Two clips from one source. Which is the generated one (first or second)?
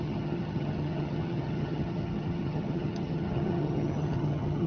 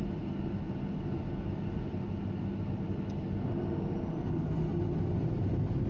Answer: first